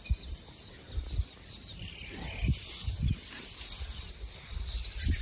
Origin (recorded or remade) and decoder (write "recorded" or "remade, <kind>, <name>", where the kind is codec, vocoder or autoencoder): recorded